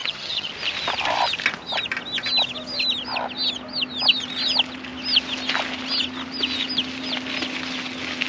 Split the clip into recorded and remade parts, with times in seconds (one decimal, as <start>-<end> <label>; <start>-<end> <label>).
0.0-0.5 remade; 0.5-8.3 recorded